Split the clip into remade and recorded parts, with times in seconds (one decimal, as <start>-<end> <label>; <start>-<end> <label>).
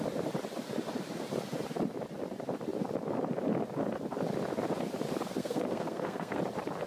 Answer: 0.0-5.4 recorded; 5.4-6.4 remade; 6.4-6.9 recorded